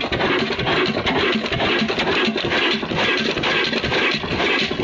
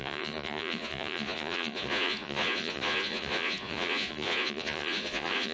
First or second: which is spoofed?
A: second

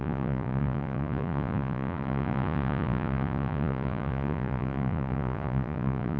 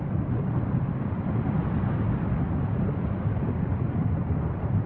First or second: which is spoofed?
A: first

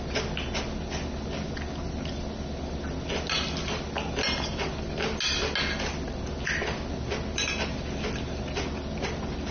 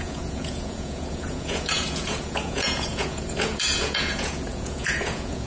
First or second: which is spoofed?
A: second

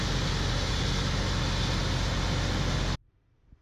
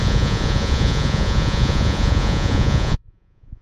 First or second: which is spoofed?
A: second